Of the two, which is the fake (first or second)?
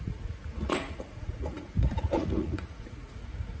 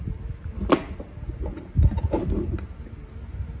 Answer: first